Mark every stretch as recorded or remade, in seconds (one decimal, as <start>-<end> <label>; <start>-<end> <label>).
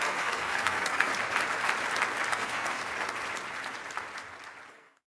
0.0-1.1 remade; 1.1-2.3 recorded; 2.3-2.8 remade; 2.8-4.7 recorded; 4.7-5.2 remade